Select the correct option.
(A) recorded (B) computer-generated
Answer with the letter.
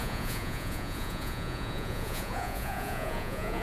B